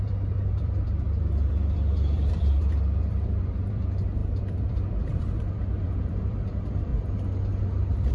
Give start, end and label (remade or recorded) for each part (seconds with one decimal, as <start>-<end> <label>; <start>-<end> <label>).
0.0-6.9 remade; 6.9-7.6 recorded; 7.6-8.1 remade